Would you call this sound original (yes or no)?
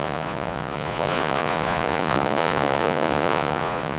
no